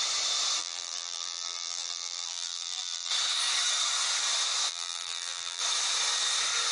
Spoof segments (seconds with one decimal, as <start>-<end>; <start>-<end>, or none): 0.6-3.1; 4.7-5.6